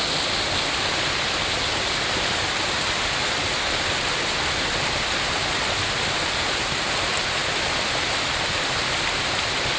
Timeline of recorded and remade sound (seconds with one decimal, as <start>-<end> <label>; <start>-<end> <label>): 0.0-7.4 recorded; 7.4-9.3 remade; 9.3-9.8 recorded

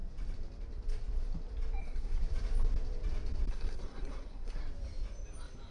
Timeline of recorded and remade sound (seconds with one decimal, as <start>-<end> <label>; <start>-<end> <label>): 0.0-1.8 recorded; 1.8-2.2 remade; 2.2-3.5 recorded; 3.5-4.6 remade; 4.6-5.7 recorded

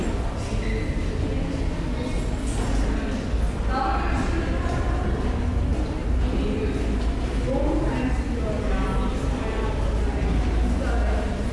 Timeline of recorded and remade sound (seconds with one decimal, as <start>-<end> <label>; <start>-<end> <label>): 0.0-11.5 recorded

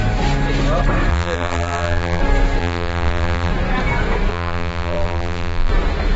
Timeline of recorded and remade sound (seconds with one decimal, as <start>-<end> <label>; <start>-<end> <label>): 0.0-1.1 recorded; 1.1-2.2 remade; 2.2-2.6 recorded; 2.6-3.5 remade; 3.5-4.3 recorded; 4.3-5.7 remade; 5.7-6.2 recorded